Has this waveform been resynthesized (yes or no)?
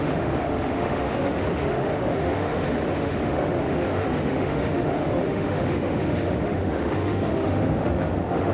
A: yes